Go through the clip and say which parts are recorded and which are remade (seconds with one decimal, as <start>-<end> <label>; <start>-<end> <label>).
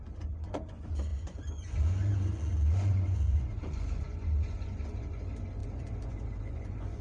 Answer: 0.0-7.0 remade